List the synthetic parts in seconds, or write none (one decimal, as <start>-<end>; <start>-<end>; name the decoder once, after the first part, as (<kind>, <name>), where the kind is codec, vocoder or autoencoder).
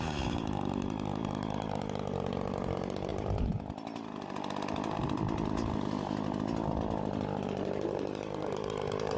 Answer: 1.2-1.8 (vocoder, BigVGAN v2)